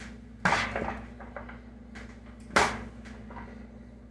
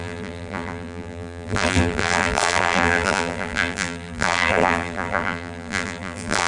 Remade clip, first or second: second